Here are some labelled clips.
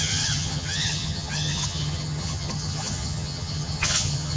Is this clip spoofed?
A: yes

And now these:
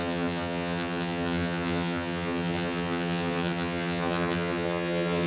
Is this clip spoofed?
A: yes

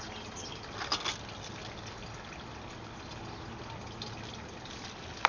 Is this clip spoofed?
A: no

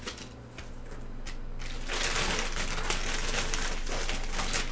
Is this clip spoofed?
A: no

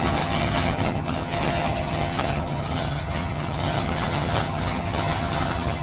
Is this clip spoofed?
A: yes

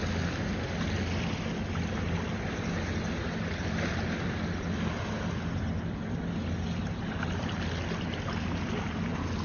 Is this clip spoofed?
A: no